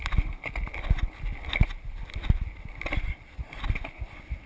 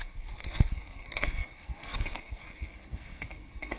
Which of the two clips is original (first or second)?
first